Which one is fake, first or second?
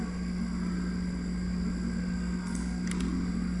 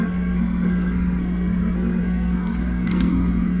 second